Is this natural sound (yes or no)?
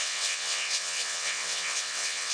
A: no